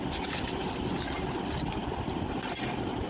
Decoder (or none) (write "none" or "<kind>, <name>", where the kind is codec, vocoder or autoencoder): none